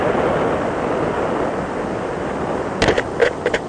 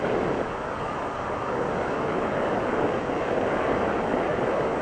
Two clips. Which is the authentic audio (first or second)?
first